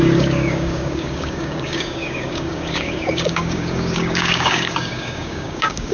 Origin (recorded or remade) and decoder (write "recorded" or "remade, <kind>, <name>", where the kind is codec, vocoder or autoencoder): remade, codec, DAC